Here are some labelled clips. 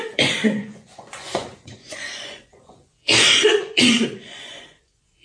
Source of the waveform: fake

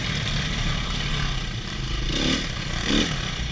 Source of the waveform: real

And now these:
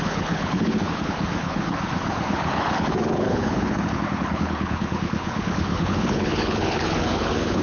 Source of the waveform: fake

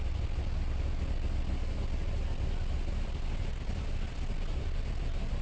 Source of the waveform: real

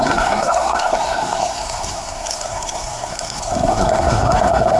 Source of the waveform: fake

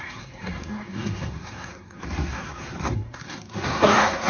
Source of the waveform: fake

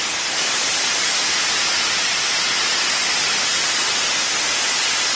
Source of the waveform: real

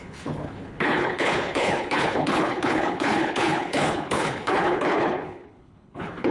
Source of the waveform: fake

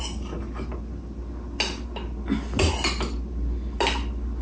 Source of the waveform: real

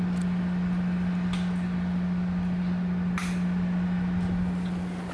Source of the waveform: real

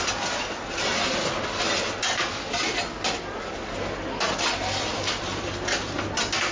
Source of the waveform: real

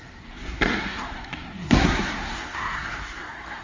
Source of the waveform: fake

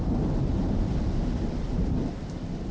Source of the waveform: real